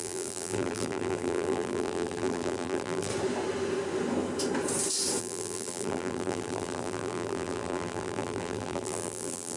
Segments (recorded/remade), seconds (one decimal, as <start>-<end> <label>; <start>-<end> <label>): 0.0-3.1 remade; 3.1-5.2 recorded; 5.2-9.6 remade